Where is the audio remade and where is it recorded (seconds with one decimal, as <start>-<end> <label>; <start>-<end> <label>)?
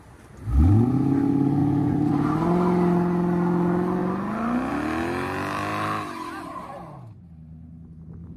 0.0-1.6 recorded; 1.6-2.1 remade; 2.1-8.4 recorded